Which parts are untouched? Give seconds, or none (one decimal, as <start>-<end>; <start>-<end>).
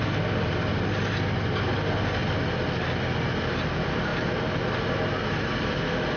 0.0-6.2